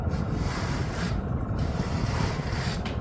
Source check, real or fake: fake